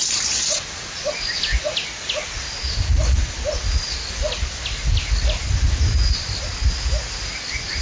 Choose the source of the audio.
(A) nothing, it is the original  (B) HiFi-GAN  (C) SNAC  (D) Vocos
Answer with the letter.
A